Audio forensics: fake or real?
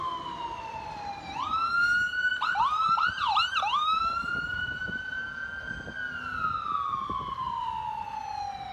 real